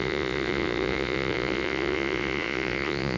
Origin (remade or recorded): remade